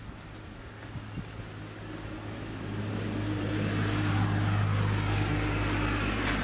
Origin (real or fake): real